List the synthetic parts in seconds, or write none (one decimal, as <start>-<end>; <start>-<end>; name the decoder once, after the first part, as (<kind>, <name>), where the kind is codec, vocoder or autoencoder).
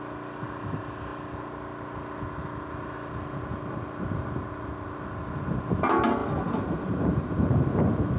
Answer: none